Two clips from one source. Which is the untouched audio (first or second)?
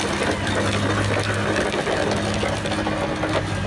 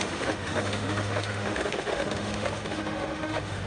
first